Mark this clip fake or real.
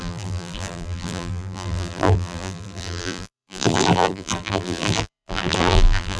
fake